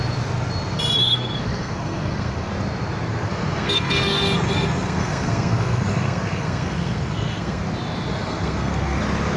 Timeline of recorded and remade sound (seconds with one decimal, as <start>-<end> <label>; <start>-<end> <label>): 0.0-1.0 recorded; 1.0-2.5 remade; 2.5-3.1 recorded; 3.1-7.6 remade; 7.6-8.1 recorded; 8.1-9.0 remade; 9.0-9.4 recorded